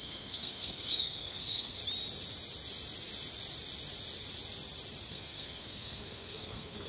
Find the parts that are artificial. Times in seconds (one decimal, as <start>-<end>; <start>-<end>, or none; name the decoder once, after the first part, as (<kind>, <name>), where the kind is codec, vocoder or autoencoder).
0.0-1.8 (codec, SNAC); 5.1-6.9

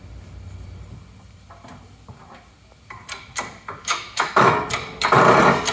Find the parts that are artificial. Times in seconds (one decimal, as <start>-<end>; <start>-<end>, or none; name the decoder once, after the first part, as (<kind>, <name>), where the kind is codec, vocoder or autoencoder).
3.8-4.5 (autoencoder, DAC-VAE)

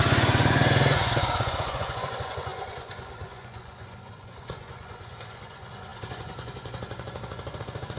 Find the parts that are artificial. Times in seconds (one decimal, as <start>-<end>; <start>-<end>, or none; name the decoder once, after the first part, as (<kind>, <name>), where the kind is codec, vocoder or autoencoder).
0.0-8.0 (vocoder, Vocos)

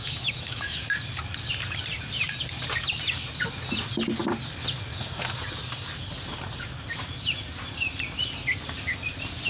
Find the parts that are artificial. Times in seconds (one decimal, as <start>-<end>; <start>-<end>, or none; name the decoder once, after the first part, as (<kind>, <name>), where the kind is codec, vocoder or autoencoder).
0.0-0.8 (autoencoder, DAC-VAE)

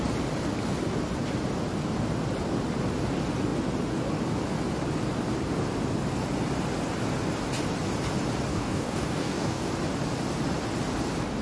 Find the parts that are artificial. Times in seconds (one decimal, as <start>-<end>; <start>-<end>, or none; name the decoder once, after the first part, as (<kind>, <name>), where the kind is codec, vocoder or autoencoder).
8.5-9.7 (codec, DAC)